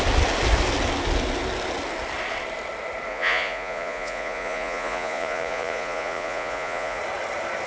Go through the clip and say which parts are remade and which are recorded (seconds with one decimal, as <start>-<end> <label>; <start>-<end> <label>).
0.0-3.1 recorded; 3.1-7.0 remade; 7.0-7.7 recorded